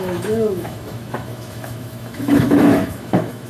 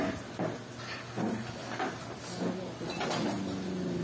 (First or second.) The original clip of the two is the second